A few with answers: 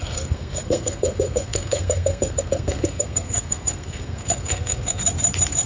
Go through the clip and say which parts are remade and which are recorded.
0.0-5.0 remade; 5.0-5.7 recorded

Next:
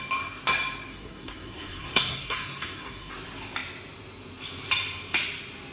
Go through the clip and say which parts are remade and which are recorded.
0.0-0.9 recorded; 0.9-3.1 remade; 3.1-5.7 recorded

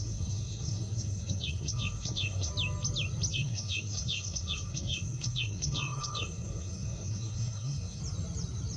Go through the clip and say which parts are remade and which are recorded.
0.0-2.5 remade; 2.5-3.3 recorded; 3.3-8.0 remade; 8.0-8.8 recorded

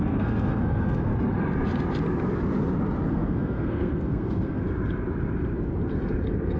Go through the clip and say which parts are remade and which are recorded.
0.0-1.1 remade; 1.1-3.1 recorded; 3.1-4.6 remade; 4.6-6.6 recorded

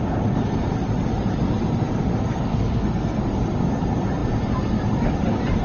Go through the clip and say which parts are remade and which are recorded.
0.0-2.2 recorded; 2.2-3.2 remade; 3.2-5.6 recorded